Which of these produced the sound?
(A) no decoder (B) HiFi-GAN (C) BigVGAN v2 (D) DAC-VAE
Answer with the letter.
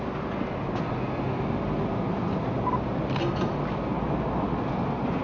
A